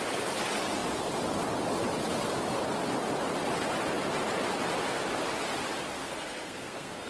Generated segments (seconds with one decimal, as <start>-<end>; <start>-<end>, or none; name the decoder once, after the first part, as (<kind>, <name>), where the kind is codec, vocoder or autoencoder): 6.0-7.1 (codec, SNAC)